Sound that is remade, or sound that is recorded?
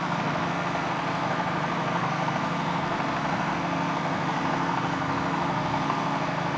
remade